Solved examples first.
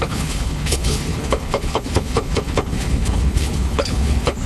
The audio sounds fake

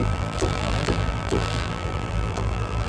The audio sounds fake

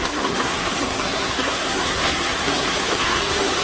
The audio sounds fake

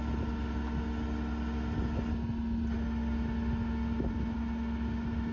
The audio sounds real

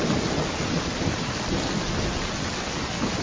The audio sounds real